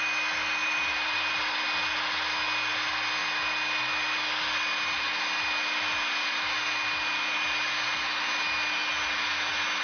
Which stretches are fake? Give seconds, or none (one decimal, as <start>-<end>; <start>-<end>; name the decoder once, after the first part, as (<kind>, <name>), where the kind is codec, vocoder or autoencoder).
0.6-1.4 (vocoder, BigVGAN v2)